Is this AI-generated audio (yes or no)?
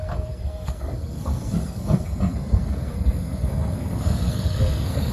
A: yes